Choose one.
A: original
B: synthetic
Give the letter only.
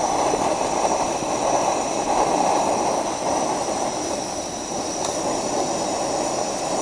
A